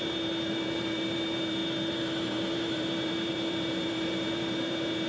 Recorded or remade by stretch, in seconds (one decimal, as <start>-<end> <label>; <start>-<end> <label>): 0.0-5.1 remade